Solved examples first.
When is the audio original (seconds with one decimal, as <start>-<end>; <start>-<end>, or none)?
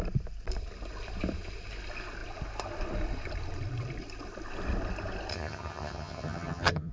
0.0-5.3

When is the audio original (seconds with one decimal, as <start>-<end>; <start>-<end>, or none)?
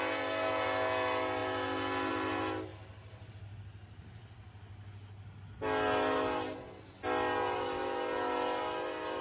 0.0-9.2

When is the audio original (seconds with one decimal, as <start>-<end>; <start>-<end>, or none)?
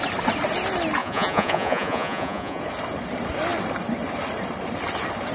0.0-1.0; 2.6-5.3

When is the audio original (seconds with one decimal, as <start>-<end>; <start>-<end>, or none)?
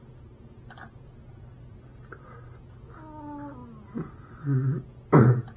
0.0-5.6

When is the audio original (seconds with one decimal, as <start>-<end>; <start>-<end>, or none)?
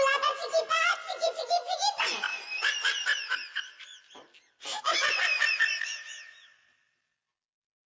0.0-7.9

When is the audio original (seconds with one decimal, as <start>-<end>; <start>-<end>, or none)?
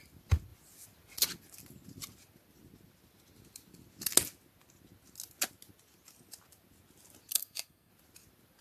0.0-7.3; 7.9-8.6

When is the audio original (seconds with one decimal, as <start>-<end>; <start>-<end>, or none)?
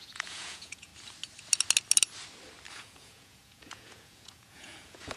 0.9-2.7